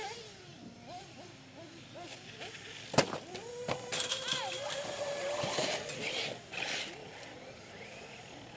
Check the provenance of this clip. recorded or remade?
recorded